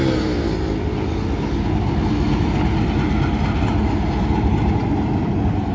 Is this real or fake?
real